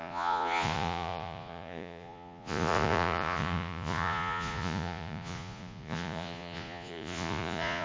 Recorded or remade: remade